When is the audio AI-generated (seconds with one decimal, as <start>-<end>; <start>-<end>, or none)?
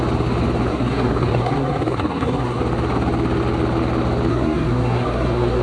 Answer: 0.7-2.6; 4.3-5.6